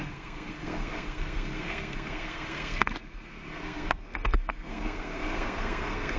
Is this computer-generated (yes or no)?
yes